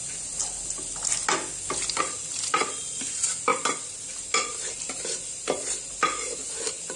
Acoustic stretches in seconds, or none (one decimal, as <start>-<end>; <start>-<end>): 0.0-7.0